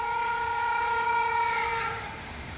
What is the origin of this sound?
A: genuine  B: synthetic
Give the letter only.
B